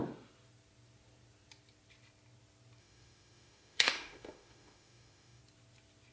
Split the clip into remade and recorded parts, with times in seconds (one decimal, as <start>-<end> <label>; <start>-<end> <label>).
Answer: 0.0-2.8 recorded; 2.8-5.4 remade; 5.4-6.1 recorded